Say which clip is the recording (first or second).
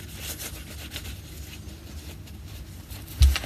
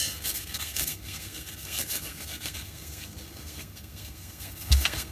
first